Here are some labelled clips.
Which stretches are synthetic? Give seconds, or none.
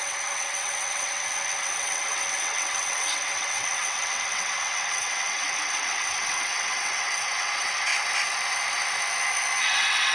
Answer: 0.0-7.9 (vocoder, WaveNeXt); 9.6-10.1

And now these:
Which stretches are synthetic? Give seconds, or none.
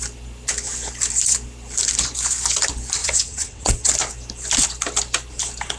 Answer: 3.0-3.9 (vocoder, WaveNeXt)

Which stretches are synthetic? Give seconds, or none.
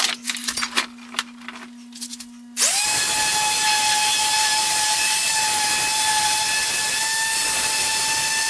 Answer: none